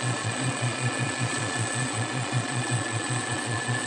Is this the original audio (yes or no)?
no